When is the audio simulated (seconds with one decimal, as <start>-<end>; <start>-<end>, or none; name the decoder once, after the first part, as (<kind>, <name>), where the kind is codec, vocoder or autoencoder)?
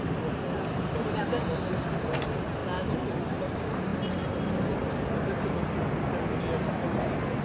none